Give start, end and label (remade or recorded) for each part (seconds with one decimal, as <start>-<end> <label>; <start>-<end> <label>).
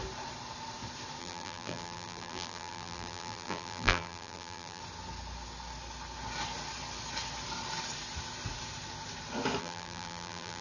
0.0-1.2 recorded; 1.2-4.8 remade; 4.8-9.6 recorded; 9.6-10.6 remade